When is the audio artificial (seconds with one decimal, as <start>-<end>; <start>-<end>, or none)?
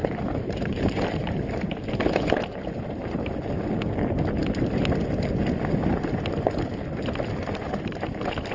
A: 0.0-3.2